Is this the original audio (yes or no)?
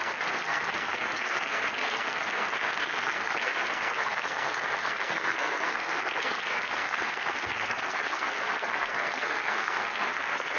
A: no